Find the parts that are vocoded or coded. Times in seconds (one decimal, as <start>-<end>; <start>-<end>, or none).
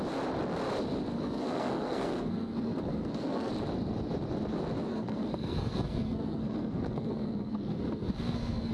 1.1-3.5; 4.9-8.7